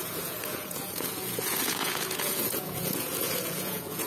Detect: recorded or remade remade